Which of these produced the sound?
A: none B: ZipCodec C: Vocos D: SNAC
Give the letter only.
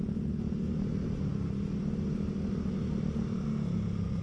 A